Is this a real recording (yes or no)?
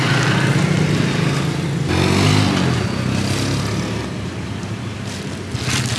yes